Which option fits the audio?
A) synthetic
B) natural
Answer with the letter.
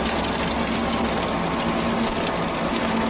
B